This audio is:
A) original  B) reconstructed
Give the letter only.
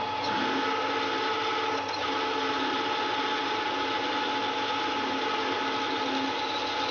A